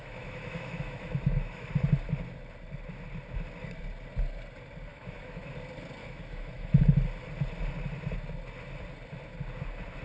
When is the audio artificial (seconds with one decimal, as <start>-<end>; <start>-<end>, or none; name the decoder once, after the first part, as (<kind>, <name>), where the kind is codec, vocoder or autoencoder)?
0.0-1.7 (autoencoder, DAC-VAE); 4.9-5.4; 6.0-6.8